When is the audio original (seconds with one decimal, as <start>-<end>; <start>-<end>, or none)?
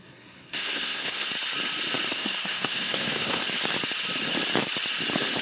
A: 1.3-2.1; 3.4-5.4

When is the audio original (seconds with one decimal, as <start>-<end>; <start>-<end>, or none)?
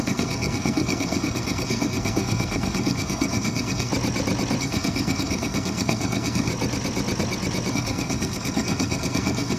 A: 3.9-4.6; 6.5-7.7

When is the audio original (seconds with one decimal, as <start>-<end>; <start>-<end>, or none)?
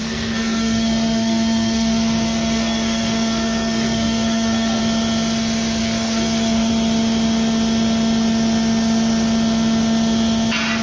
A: 4.8-5.8; 6.7-10.8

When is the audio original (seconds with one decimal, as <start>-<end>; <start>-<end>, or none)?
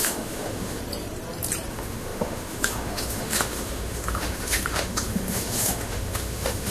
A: 0.8-1.7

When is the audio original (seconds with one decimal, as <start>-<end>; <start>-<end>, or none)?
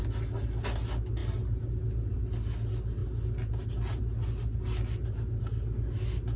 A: 0.0-6.4